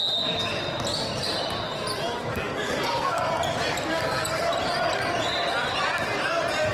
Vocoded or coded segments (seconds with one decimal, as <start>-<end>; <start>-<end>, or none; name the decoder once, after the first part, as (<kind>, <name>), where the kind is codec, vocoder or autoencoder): 2.3-3.3 (codec, SNAC); 3.9-4.5